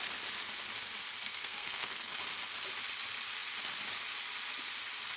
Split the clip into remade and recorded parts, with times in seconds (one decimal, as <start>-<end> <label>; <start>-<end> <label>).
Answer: 0.0-1.2 recorded; 1.2-2.2 remade; 2.2-5.2 recorded